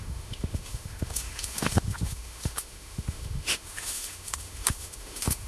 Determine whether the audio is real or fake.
fake